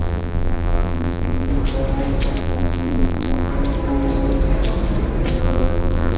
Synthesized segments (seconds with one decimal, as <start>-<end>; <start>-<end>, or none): 0.0-1.5; 2.4-3.5; 5.4-6.2